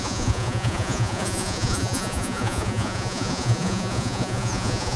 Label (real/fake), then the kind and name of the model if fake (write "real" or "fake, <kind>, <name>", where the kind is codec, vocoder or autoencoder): fake, vocoder, Vocos